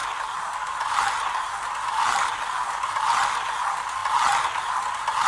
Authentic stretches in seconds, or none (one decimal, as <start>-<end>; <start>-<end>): 0.0-5.3